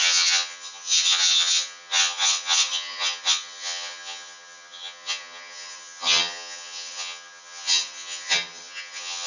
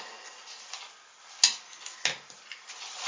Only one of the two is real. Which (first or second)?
second